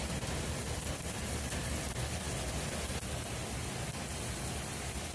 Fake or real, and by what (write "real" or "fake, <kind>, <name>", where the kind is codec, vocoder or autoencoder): real